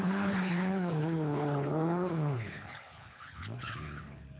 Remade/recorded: remade